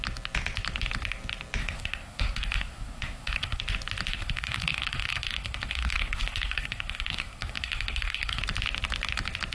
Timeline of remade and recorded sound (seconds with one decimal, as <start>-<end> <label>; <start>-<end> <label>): 0.0-1.6 recorded; 1.6-3.6 remade; 3.6-4.1 recorded; 4.1-8.4 remade; 8.4-9.5 recorded